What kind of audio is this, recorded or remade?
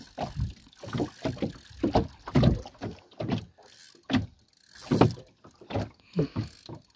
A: recorded